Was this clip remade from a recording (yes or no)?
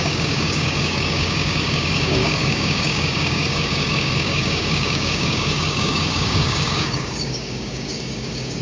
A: yes